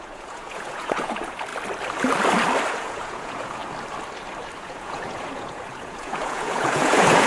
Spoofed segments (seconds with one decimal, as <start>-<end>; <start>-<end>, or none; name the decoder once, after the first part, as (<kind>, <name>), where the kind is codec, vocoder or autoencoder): 0.0-1.5 (vocoder, Vocos); 2.7-3.6; 4.6-7.3